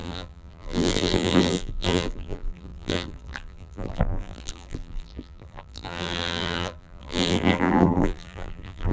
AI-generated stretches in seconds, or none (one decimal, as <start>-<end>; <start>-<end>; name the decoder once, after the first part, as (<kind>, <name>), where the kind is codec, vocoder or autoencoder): 0.0-8.9 (vocoder, BigVGAN v2)